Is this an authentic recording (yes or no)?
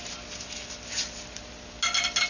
yes